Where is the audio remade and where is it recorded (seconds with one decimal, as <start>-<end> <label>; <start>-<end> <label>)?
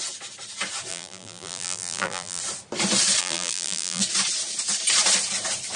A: 0.0-0.9 recorded; 0.9-2.4 remade; 2.4-3.2 recorded; 3.2-4.0 remade; 4.0-5.8 recorded